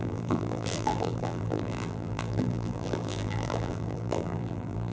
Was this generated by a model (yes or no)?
yes